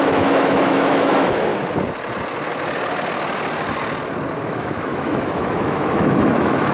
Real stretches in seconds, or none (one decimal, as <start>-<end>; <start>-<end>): 1.5-4.5